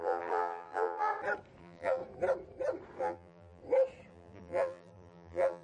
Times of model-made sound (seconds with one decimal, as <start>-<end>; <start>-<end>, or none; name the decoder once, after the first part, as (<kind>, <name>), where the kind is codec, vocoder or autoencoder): 0.0-1.1 (vocoder, BigVGAN v2); 1.6-2.0; 3.0-3.6; 4.1-5.6